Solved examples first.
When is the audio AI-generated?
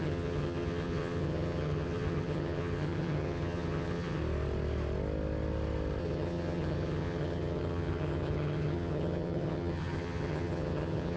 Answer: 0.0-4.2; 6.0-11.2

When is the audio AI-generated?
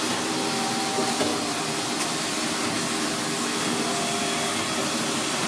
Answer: 0.0-1.3; 4.6-5.5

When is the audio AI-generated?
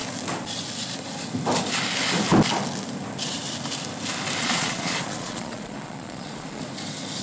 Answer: 4.4-6.6